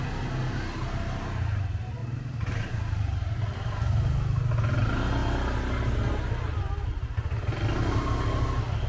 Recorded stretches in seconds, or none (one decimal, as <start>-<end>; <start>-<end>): 0.0-2.0; 3.4-8.9